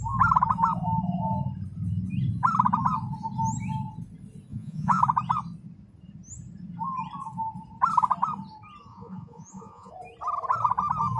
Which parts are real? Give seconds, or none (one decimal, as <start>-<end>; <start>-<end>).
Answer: 0.0-4.5; 5.0-8.9; 9.9-11.2